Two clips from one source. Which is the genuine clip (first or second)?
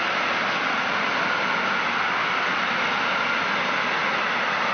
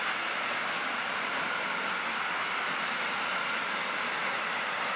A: first